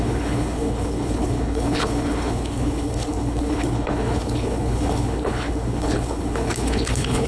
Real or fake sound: fake